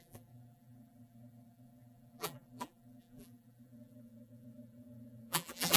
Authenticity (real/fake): fake